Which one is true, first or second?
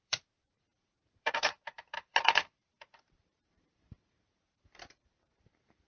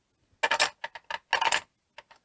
second